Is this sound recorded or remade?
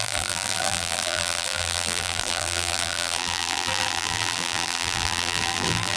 remade